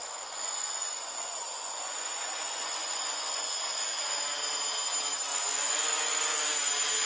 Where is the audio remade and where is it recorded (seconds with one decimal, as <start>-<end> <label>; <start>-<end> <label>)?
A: 0.0-3.5 remade; 3.5-5.3 recorded; 5.3-6.3 remade; 6.3-7.1 recorded